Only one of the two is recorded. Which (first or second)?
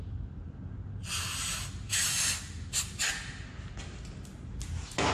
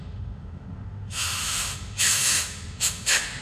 first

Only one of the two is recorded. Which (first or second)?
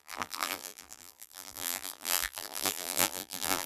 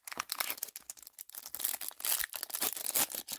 second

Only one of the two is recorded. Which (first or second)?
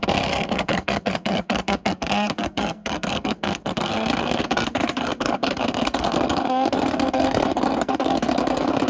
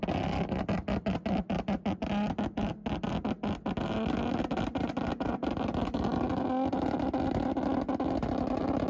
second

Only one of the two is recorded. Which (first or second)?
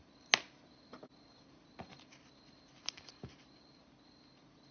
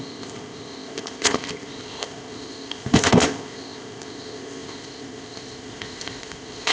first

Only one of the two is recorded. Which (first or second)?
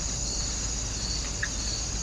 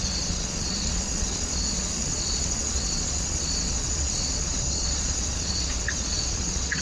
first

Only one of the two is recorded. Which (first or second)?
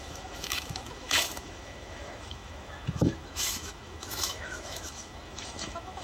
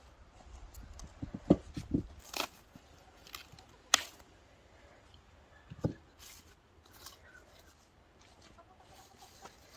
second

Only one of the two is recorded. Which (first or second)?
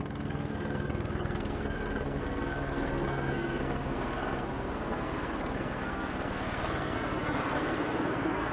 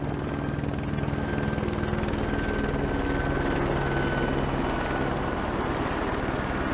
second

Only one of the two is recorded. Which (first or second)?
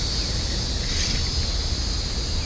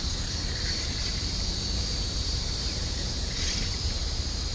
first